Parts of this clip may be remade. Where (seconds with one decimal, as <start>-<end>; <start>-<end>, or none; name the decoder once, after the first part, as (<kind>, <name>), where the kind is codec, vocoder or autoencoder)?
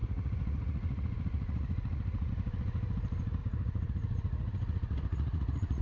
0.0-2.3 (vocoder, Vocos); 3.4-5.8